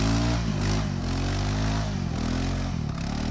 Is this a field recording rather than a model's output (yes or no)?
yes